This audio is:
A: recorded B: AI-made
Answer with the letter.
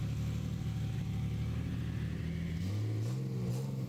A